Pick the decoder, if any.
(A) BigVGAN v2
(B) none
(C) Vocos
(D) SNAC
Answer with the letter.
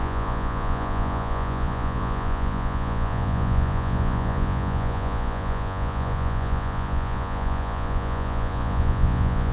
C